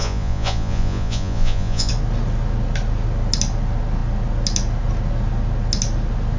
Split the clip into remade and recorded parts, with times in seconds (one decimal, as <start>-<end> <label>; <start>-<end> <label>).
0.0-1.9 remade; 1.9-6.4 recorded